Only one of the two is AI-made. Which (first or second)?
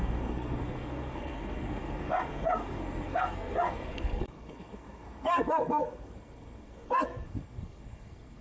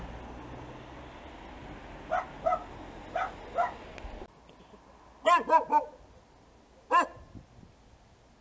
first